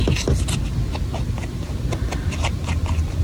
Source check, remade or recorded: recorded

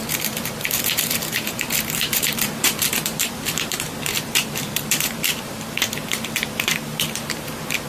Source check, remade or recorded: remade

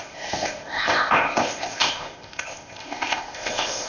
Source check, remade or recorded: remade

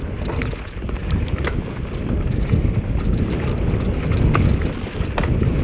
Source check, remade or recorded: recorded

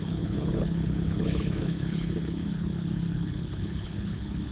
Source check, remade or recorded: remade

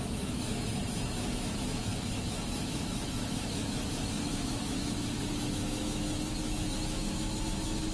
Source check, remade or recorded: remade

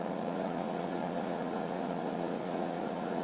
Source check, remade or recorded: remade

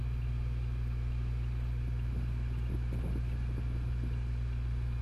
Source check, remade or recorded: recorded